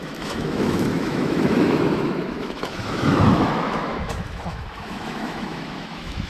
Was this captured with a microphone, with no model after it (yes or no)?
no